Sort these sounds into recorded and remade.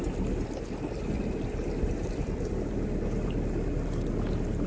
recorded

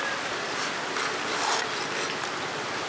recorded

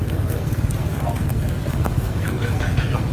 remade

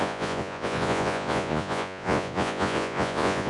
remade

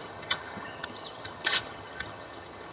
remade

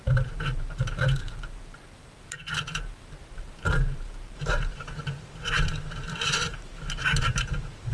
remade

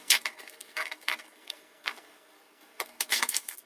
remade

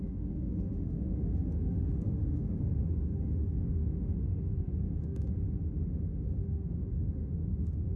remade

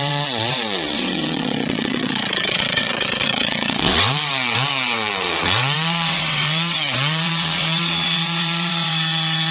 remade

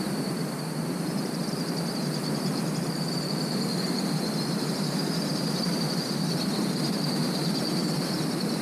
recorded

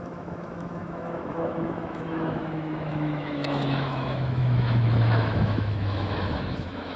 remade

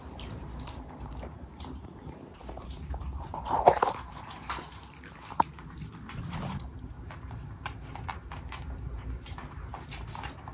remade